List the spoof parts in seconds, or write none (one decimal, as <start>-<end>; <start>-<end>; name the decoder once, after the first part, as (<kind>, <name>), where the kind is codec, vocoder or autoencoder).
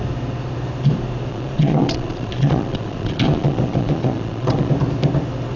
1.3-4.7 (vocoder, Vocos)